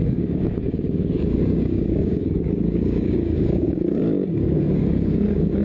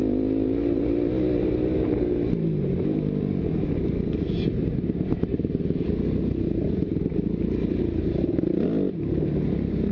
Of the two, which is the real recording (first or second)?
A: second